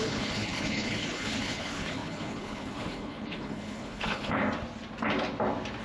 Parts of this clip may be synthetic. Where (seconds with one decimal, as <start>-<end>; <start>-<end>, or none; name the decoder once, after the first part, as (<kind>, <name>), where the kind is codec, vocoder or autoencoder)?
0.0-4.4 (codec, HILCodec)